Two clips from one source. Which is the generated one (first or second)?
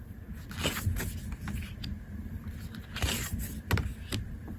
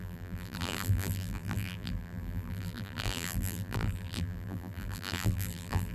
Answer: second